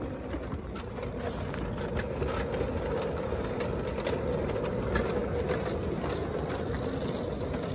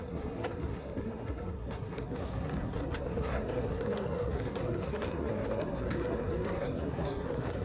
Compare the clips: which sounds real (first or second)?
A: first